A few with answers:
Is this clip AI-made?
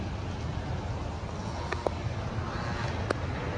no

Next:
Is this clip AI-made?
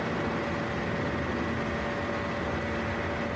no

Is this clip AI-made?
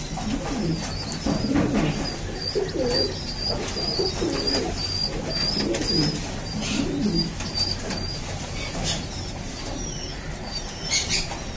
no